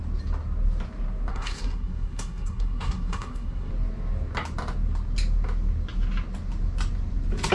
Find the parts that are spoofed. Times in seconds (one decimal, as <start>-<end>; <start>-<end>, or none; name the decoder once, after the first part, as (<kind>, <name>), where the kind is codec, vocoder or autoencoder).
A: 1.3-3.7 (codec, SNAC)